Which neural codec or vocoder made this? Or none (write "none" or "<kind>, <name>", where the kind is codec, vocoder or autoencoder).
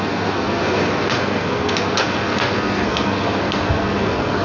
codec, SNAC